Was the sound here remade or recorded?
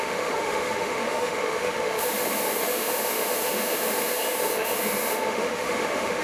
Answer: remade